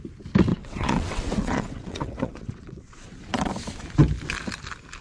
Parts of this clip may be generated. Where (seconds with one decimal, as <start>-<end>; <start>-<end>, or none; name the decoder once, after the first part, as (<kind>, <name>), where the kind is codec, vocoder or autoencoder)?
0.5-3.5 (vocoder, WaveNeXt)